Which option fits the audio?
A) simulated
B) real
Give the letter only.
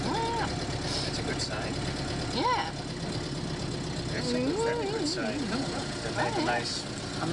B